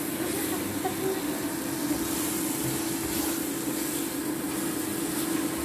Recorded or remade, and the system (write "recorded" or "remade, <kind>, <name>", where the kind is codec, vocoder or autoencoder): recorded